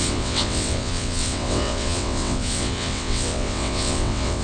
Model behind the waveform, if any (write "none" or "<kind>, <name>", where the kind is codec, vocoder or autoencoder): vocoder, WaveNeXt